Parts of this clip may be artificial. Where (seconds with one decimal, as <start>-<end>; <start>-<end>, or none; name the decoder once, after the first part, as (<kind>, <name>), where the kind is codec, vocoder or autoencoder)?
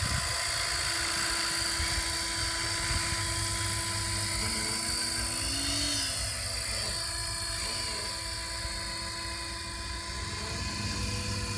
none